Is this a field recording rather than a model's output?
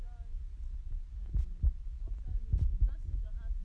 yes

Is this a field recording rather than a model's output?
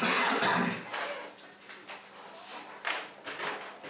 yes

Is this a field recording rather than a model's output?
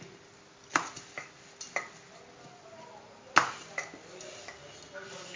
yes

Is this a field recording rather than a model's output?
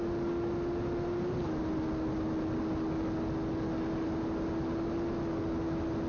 yes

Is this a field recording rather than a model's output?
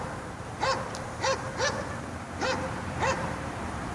no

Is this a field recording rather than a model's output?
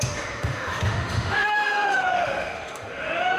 no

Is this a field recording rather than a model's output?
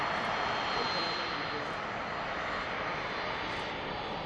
yes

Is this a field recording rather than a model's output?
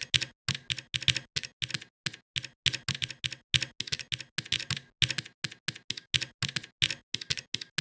yes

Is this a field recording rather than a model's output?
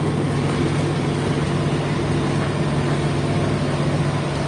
yes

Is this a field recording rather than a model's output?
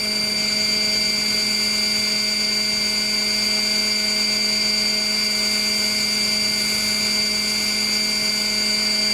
yes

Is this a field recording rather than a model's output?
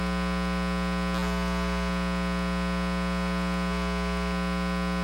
yes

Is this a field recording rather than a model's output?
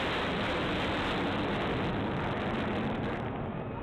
yes